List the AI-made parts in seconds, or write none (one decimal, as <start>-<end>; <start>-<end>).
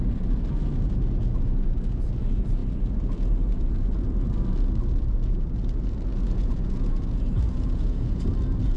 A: 6.1-8.2